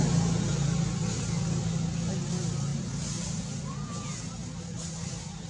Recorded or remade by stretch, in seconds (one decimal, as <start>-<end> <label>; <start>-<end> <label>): 0.0-2.7 recorded; 2.7-3.4 remade; 3.4-4.4 recorded; 4.4-5.5 remade